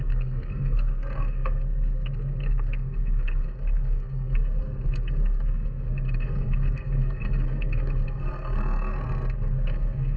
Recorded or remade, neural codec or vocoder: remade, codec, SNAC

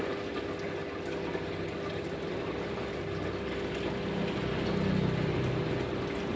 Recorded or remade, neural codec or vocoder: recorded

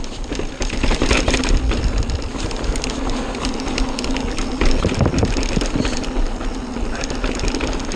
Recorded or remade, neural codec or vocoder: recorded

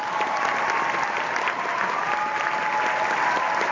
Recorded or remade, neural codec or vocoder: recorded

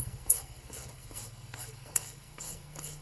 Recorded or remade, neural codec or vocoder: remade, codec, SNAC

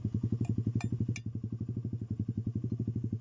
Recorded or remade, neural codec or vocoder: recorded